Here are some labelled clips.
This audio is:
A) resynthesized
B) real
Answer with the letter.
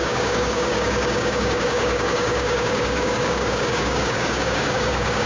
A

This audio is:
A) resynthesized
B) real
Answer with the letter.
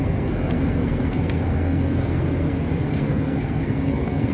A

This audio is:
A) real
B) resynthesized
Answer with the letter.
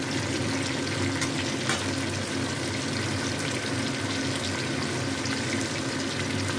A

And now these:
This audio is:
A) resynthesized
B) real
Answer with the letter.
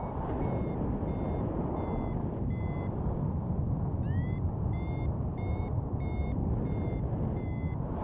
B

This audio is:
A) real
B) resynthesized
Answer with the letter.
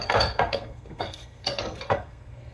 B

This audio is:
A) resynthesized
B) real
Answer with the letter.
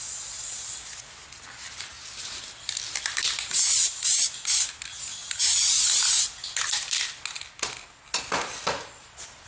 B